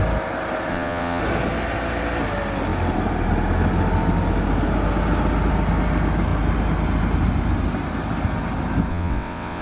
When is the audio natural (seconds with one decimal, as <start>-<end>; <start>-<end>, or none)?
0.0-0.7; 1.2-8.9